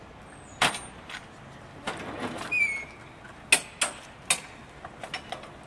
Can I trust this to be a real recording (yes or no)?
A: yes